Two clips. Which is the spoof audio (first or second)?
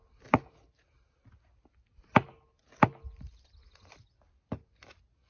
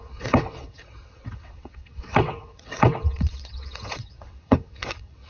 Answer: second